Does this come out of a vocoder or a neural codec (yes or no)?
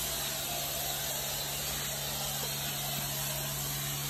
no